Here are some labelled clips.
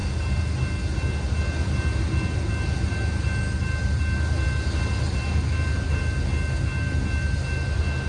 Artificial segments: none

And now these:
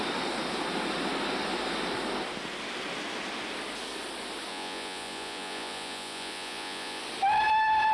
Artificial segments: 4.5-7.0 (vocoder, Vocos)

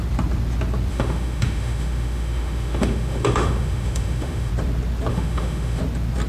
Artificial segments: 0.9-4.5 (autoencoder, DAC-VAE); 5.1-5.8

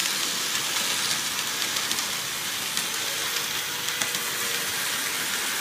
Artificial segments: none

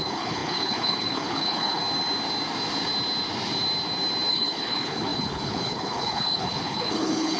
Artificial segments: 0.0-1.8 (codec, HILCodec); 4.3-7.4

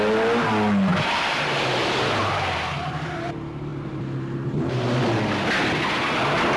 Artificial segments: 0.9-2.9 (vocoder, BigVGAN v2); 3.7-5.0

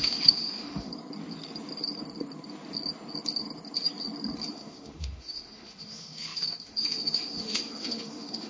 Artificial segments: 0.0-0.9 (autoencoder, DAC-VAE); 4.5-8.5

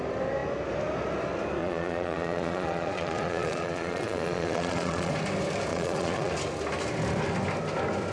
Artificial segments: 1.6-5.1 (vocoder, Vocos); 5.7-6.3